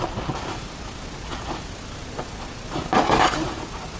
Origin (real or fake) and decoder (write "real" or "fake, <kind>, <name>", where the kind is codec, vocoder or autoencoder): real